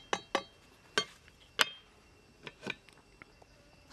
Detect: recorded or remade recorded